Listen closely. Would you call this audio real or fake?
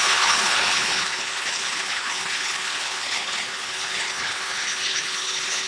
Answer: fake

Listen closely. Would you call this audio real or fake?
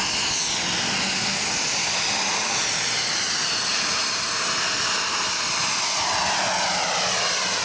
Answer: real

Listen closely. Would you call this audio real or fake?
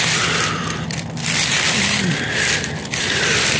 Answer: real